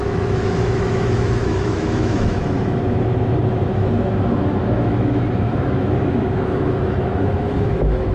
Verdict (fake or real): fake